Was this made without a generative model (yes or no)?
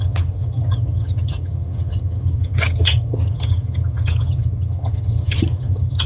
no